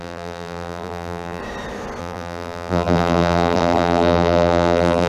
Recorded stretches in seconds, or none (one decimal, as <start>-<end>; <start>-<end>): 1.4-2.0